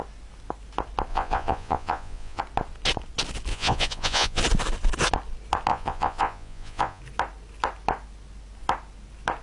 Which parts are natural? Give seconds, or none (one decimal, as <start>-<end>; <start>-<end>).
0.0-1.1; 2.4-3.5; 4.4-5.7; 7.0-9.4